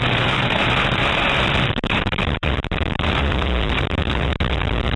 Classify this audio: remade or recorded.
remade